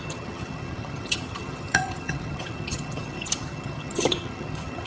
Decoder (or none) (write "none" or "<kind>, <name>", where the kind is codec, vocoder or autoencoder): vocoder, HiFi-GAN